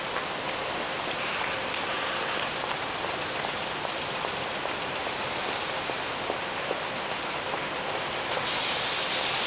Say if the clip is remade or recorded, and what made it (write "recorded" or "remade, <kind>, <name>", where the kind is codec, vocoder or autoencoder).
recorded